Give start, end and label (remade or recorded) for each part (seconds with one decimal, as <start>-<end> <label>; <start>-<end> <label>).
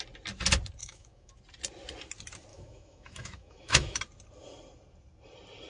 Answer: 0.0-0.8 recorded; 0.8-1.3 remade; 1.3-2.5 recorded; 2.5-4.0 remade; 4.0-5.7 recorded